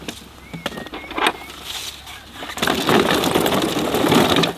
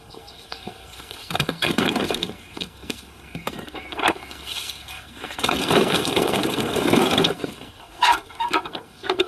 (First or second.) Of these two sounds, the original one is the first